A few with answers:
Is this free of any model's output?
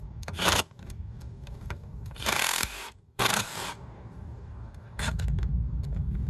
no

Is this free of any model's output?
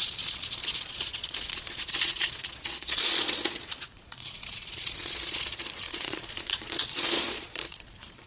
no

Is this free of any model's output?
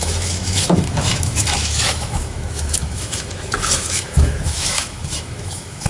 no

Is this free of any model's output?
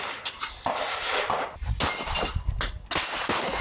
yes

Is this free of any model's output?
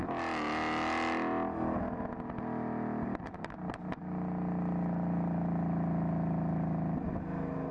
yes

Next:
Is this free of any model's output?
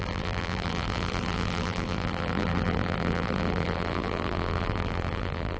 no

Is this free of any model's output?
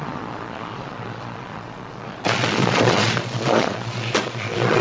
no